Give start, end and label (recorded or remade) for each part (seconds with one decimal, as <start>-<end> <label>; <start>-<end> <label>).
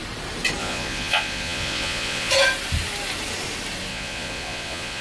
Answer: 0.0-0.6 recorded; 0.6-2.3 remade; 2.3-3.9 recorded; 3.9-5.0 remade